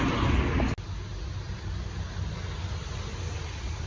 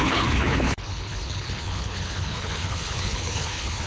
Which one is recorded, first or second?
first